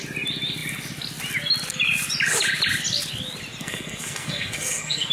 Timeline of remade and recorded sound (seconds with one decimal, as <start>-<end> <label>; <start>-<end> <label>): 0.0-3.6 recorded; 3.6-5.1 remade